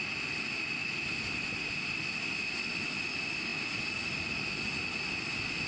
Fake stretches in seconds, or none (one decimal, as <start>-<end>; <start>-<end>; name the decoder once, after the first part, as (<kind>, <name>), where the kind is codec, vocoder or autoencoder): none